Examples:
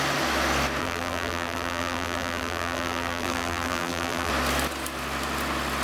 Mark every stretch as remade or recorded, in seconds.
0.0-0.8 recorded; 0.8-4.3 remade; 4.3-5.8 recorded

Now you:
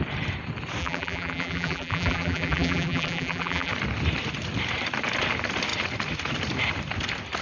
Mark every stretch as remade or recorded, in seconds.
0.0-0.8 recorded; 0.8-3.7 remade; 3.7-7.4 recorded

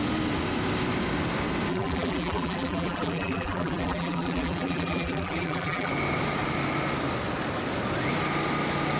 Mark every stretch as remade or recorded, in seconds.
0.0-1.7 recorded; 1.7-5.9 remade; 5.9-9.0 recorded

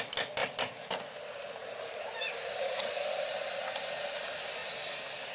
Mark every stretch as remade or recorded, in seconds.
0.0-0.4 recorded; 0.4-3.6 remade; 3.6-5.3 recorded

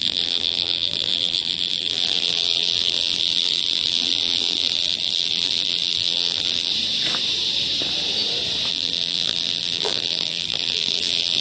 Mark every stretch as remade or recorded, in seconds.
0.0-6.7 remade; 6.7-8.7 recorded; 8.7-11.4 remade

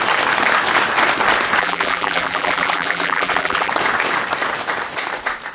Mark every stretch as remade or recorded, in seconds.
0.0-1.6 recorded; 1.6-3.7 remade; 3.7-5.5 recorded

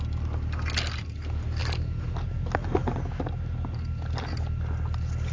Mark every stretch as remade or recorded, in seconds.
0.0-5.3 recorded